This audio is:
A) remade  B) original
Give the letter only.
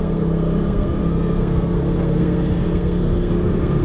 A